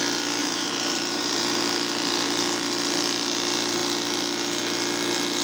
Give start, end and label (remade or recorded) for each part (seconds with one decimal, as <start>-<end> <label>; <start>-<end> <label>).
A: 0.0-0.4 recorded; 0.4-1.6 remade; 1.6-5.4 recorded